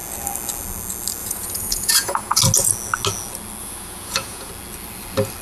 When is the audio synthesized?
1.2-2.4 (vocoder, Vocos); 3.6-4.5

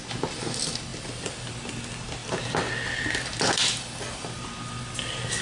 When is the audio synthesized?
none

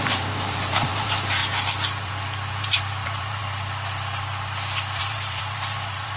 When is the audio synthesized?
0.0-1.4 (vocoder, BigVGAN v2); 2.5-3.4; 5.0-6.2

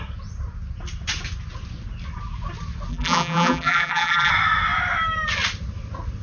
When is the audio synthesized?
2.9-4.3 (vocoder, BigVGAN v2)

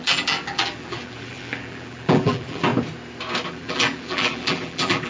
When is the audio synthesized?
0.0-2.7 (vocoder, BigVGAN v2); 3.5-5.1

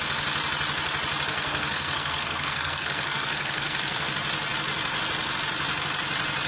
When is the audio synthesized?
1.3-4.1 (codec, SNAC)

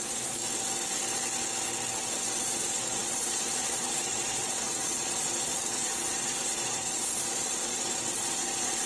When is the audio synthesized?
0.0-0.4 (vocoder, Vocos); 2.4-8.9

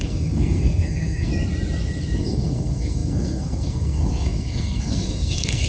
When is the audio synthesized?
0.0-1.3 (codec, SNAC); 2.2-5.7